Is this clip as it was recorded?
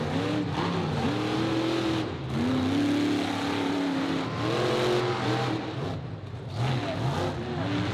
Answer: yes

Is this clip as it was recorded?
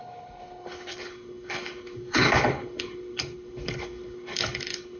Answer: no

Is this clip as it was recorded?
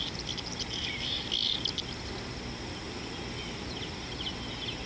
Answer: yes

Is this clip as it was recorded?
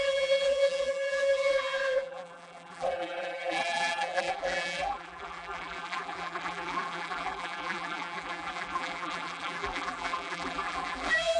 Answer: no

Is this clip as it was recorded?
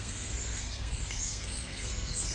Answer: no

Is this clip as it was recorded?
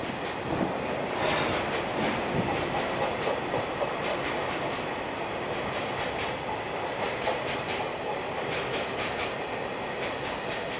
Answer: yes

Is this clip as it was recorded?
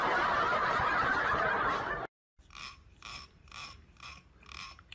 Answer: no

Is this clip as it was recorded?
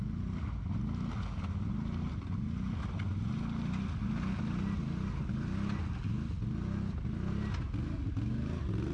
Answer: yes